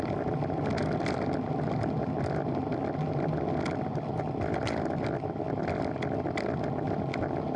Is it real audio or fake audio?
real